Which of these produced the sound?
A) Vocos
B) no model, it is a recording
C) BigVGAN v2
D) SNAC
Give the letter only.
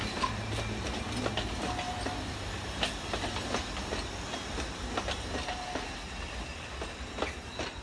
B